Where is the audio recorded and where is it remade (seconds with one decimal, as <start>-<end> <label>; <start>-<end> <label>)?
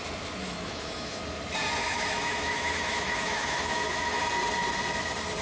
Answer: 0.0-0.4 recorded; 0.4-1.2 remade; 1.2-1.8 recorded; 1.8-4.2 remade; 4.2-5.4 recorded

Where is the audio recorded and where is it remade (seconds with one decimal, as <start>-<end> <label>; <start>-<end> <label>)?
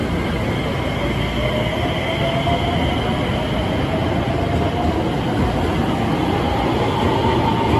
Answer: 0.0-7.8 recorded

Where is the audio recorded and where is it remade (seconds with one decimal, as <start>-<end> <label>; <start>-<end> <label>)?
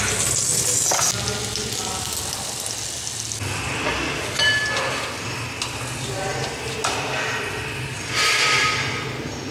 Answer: 0.0-9.5 recorded